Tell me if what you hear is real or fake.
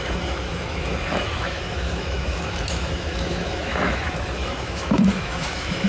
fake